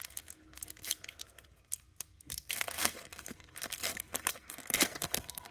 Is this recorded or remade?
remade